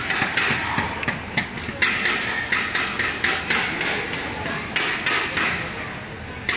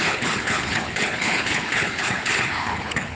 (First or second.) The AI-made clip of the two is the second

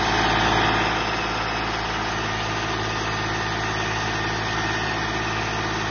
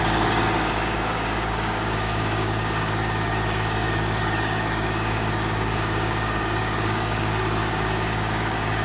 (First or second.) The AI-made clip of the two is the second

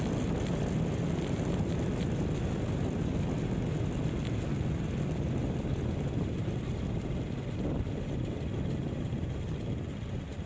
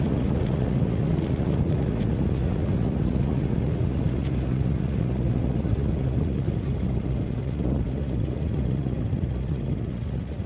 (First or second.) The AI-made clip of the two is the second